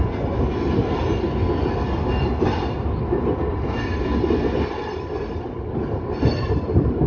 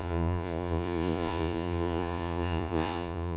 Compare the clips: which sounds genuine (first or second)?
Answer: first